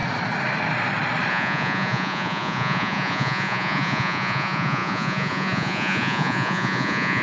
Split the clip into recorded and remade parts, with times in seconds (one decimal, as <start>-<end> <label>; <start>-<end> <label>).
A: 0.0-1.3 recorded; 1.3-7.2 remade